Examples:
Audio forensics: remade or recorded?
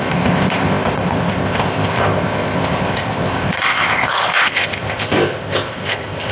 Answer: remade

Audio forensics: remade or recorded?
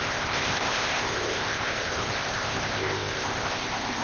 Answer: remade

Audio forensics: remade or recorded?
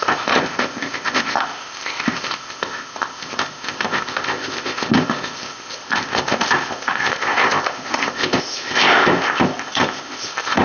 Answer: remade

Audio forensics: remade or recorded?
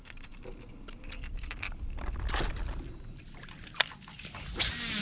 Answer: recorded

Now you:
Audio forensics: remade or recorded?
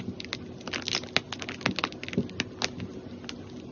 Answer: recorded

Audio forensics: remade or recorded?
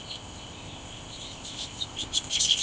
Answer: remade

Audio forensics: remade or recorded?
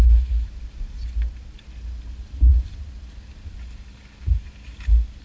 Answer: recorded